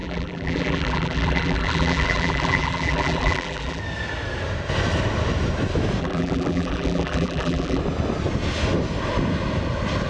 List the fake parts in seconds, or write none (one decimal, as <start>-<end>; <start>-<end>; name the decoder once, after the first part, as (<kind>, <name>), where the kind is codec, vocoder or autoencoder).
0.0-3.8 (vocoder, BigVGAN v2); 6.0-7.8